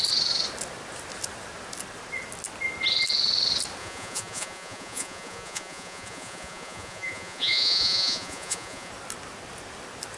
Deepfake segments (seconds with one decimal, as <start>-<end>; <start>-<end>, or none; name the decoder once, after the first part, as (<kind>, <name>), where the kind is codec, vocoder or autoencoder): 3.8-8.9 (vocoder, Vocos)